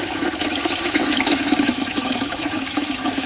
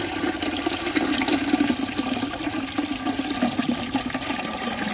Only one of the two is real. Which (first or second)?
second